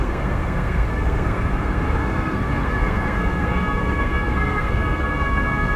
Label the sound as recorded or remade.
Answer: remade